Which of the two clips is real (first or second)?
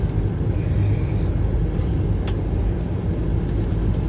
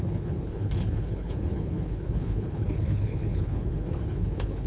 first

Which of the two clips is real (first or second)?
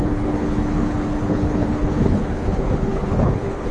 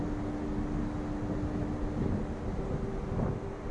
second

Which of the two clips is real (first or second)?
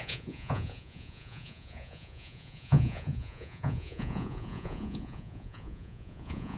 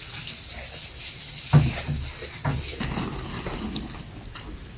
second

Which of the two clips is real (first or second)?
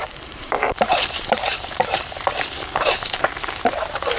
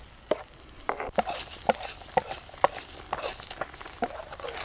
second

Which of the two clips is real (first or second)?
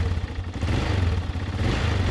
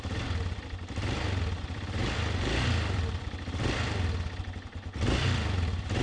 first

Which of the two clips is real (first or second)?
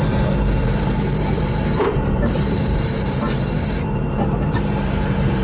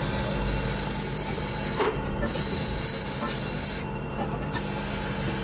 second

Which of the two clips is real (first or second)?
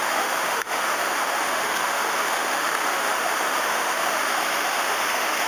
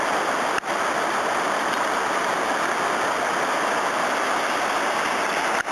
second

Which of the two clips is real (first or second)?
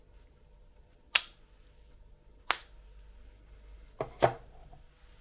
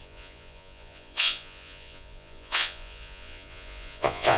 first